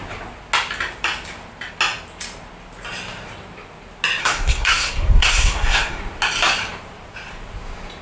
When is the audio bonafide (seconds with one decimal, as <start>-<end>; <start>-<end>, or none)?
0.0-4.2; 6.0-8.0

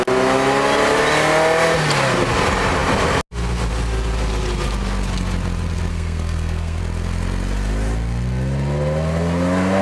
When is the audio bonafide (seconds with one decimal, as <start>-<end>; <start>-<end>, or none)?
0.0-5.9; 6.8-9.8

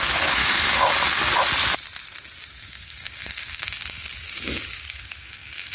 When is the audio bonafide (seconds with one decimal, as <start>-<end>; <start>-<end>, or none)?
0.4-2.6

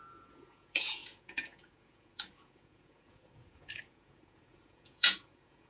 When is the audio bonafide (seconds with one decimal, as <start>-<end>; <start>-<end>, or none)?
none

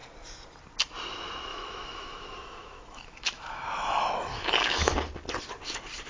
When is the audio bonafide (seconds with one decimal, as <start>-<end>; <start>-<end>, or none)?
0.0-1.5; 4.9-6.1

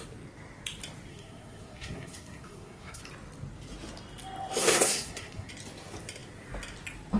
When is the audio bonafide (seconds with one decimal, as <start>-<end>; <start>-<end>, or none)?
0.0-1.1; 3.0-4.6; 5.5-7.2